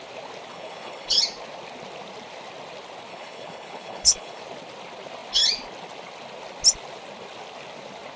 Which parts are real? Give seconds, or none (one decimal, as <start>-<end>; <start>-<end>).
0.0-0.5; 1.2-3.1; 4.4-8.2